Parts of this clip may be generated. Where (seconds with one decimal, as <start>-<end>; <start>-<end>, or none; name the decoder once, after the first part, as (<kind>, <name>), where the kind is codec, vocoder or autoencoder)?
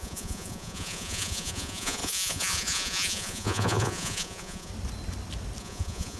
0.0-4.7 (vocoder, Vocos); 5.6-6.2